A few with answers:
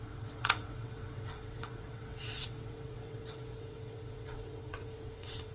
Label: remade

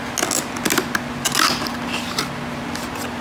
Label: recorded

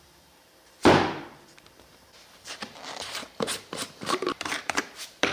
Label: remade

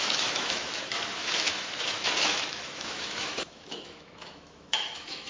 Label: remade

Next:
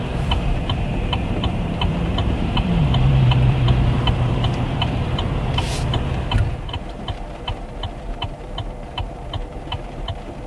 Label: remade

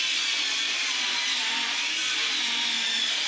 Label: recorded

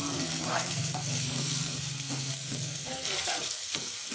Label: remade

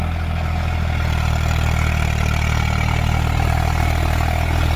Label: recorded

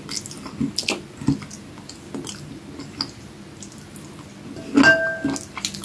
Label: recorded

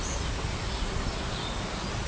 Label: recorded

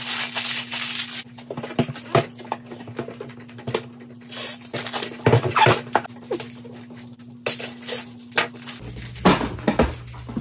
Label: recorded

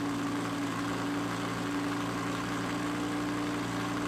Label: recorded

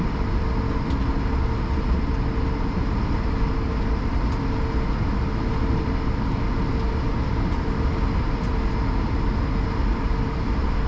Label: recorded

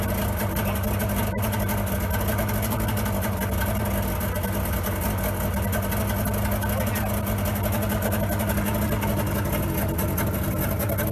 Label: recorded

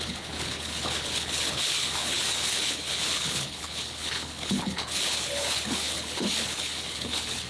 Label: remade